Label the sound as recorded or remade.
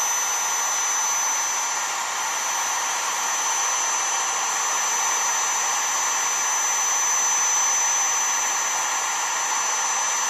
recorded